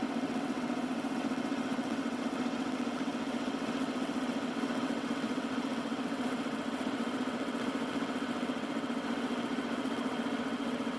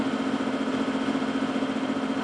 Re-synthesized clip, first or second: first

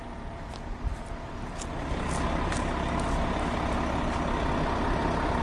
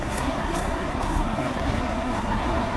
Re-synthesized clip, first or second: second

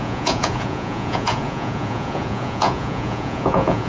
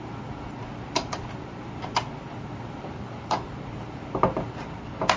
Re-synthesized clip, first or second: first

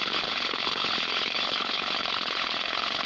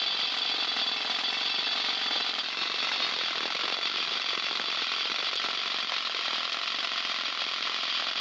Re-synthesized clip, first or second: first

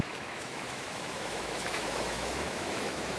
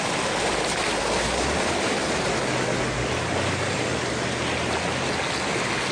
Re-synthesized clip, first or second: first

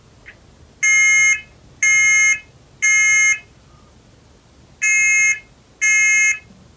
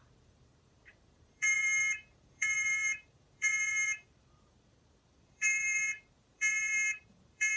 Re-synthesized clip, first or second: second